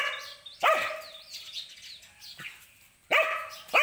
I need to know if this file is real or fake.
real